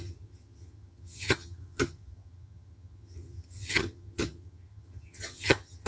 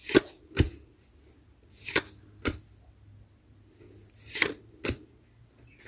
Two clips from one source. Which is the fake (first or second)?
first